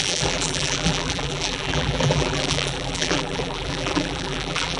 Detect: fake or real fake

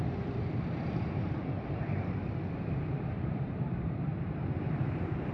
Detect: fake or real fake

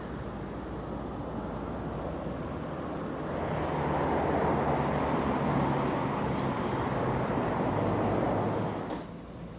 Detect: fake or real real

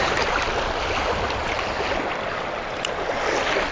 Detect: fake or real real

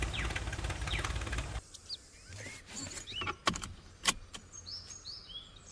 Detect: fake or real real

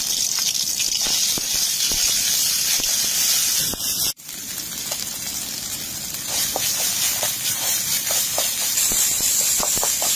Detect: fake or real fake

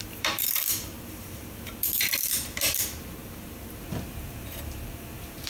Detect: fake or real fake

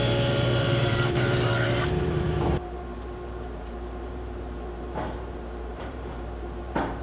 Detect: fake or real fake